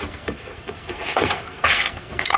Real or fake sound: fake